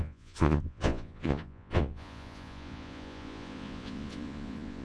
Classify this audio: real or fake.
fake